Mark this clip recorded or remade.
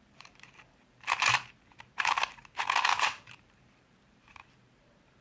remade